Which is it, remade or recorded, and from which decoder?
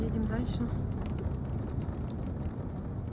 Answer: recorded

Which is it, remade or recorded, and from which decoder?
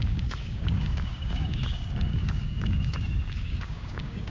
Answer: remade, codec, DAC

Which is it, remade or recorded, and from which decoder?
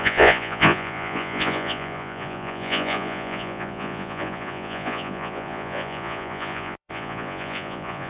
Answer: remade, vocoder, Vocos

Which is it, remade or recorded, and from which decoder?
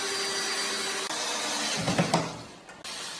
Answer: recorded